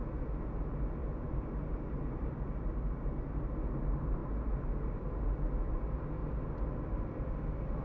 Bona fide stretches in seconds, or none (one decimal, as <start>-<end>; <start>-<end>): 0.0-1.0; 2.3-7.8